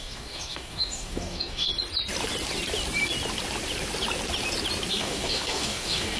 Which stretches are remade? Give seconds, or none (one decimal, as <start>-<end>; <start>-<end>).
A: 0.0-1.7; 4.9-6.2